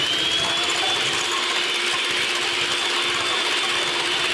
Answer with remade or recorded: recorded